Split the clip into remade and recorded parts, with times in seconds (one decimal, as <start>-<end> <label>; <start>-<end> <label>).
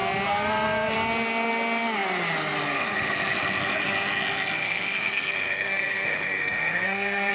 0.0-4.6 recorded; 4.6-7.3 remade